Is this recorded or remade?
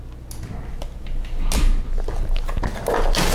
recorded